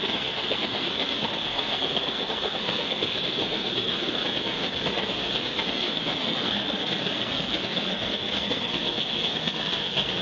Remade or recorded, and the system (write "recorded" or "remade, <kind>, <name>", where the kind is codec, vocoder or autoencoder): remade, codec, SNAC